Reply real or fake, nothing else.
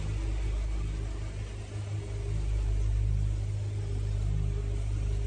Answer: real